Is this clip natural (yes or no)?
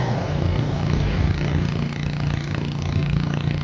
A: no